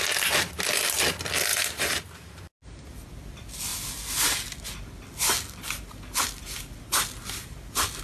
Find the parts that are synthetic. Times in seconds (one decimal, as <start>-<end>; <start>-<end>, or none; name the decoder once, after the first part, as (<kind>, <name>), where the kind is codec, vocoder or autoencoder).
1.5-2.4 (vocoder, BigVGAN v2)